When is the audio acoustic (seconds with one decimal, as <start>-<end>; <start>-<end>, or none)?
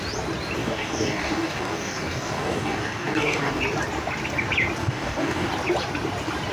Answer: 0.0-0.6; 3.6-4.8; 5.5-6.5